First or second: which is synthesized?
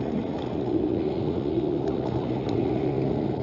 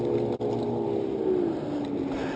first